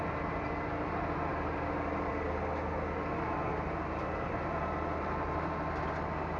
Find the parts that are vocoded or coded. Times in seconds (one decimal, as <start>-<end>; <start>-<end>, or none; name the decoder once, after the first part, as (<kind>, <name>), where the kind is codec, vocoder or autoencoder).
none